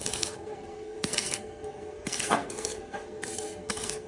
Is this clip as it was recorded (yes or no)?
no